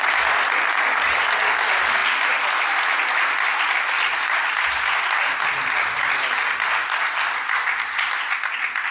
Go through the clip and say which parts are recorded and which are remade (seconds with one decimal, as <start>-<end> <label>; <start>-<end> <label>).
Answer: 0.0-8.9 recorded